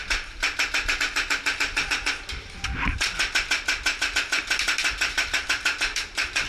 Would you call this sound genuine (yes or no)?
yes